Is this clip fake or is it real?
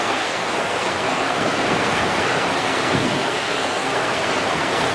fake